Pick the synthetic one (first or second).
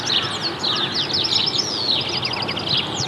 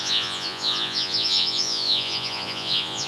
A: second